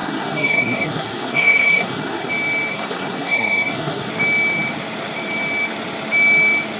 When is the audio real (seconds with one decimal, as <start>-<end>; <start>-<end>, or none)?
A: 2.3-2.7; 4.1-6.8